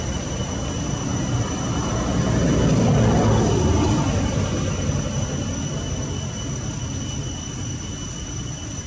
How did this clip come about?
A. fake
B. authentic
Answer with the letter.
B